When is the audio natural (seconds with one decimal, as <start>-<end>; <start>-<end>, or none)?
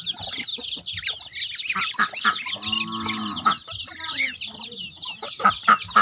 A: 0.0-0.5; 2.5-6.0